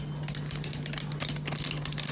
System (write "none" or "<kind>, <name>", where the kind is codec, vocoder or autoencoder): none